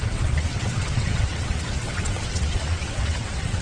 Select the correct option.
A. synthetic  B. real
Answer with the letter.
A